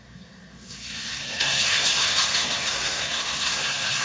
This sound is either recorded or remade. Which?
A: remade